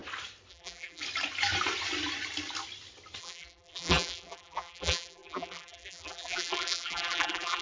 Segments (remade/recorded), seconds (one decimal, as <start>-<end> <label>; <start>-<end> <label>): 0.0-0.5 recorded; 0.5-1.0 remade; 1.0-3.2 recorded; 3.2-7.6 remade